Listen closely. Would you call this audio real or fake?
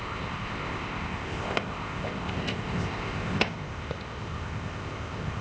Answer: fake